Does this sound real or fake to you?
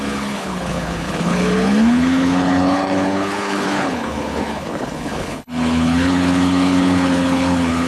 fake